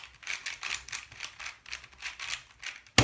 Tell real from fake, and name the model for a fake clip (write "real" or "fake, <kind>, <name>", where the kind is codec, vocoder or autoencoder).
real